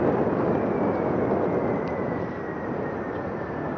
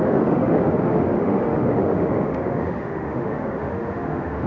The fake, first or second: second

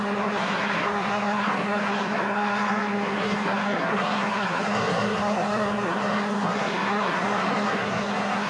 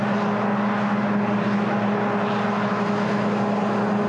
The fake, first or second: first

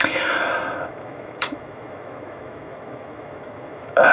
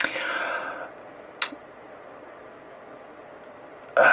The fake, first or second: first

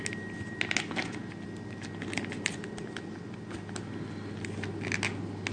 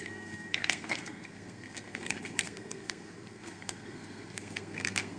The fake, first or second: second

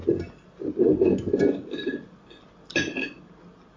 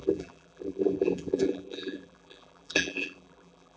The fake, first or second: second